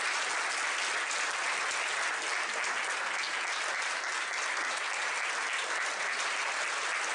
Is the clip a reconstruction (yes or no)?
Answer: no